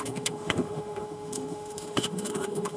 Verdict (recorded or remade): remade